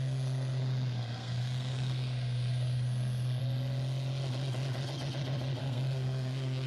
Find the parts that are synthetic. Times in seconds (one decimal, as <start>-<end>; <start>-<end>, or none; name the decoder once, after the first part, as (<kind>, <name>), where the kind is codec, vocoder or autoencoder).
0.0-3.4 (codec, SNAC); 5.6-6.7